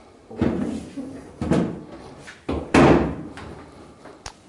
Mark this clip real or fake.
real